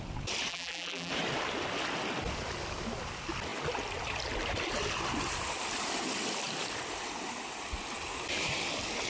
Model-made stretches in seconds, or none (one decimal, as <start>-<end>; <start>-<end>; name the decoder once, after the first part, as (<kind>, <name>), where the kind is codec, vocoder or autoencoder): 0.5-1.1 (vocoder, BigVGAN v2)